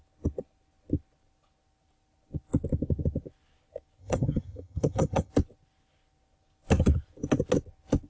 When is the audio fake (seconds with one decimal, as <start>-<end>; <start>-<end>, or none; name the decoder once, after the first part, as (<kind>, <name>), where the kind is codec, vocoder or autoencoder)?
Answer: 4.0-5.3 (vocoder, HiFi-GAN)